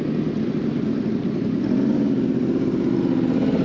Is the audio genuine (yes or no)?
yes